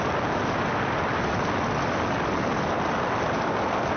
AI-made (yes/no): no